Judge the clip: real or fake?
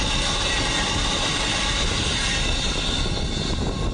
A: real